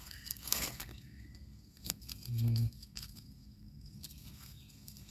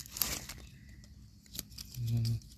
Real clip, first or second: second